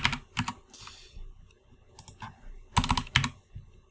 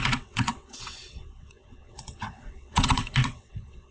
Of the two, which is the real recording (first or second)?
first